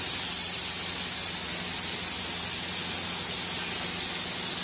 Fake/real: real